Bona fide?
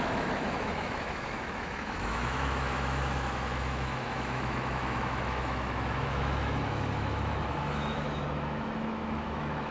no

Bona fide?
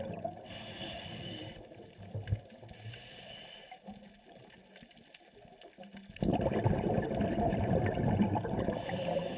yes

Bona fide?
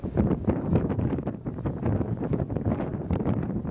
no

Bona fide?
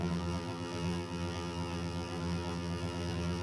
no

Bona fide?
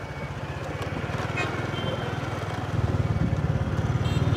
yes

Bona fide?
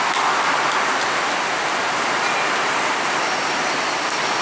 yes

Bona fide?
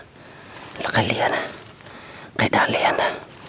no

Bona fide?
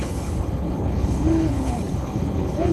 no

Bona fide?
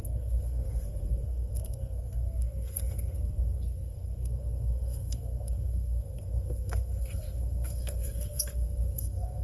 no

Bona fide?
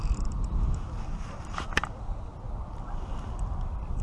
yes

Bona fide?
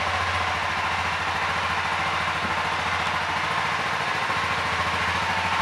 yes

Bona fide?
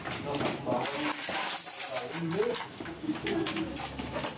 no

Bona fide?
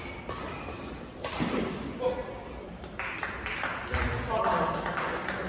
yes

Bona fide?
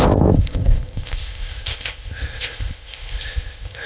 no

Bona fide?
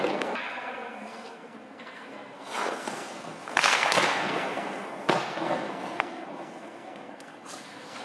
no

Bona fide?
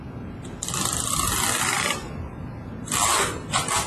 no